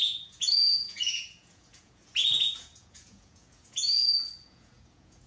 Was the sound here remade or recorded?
remade